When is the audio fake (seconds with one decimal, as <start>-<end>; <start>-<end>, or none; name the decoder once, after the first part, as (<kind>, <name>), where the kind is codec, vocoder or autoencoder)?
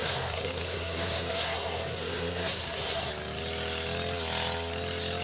0.0-3.1 (codec, SNAC)